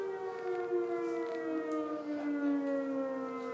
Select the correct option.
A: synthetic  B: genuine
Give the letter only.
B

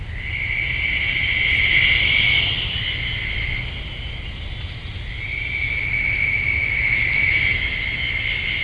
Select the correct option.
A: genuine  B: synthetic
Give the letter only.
A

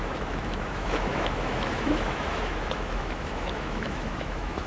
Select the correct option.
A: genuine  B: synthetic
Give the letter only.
B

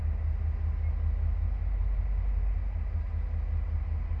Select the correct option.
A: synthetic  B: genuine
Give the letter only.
B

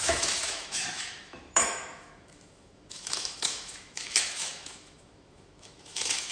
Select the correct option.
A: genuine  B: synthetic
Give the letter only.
B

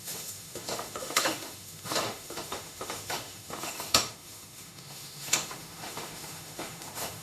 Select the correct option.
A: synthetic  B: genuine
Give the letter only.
A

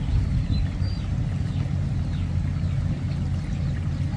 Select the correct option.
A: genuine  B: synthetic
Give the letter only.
A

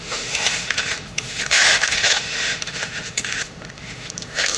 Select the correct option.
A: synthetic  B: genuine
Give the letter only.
A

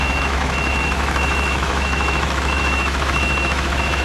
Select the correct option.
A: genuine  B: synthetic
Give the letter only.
B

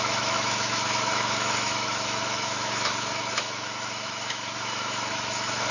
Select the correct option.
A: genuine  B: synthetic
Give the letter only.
B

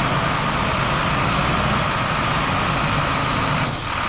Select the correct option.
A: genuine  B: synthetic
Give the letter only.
A